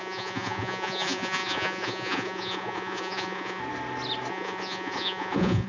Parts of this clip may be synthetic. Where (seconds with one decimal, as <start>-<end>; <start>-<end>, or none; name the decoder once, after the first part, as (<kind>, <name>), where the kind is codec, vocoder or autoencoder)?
0.0-3.6 (vocoder, Vocos); 4.3-5.7